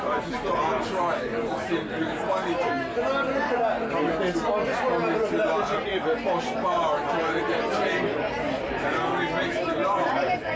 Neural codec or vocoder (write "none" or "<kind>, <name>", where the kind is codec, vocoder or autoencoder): none